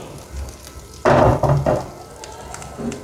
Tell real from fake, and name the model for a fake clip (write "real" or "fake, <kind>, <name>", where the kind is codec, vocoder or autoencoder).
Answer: real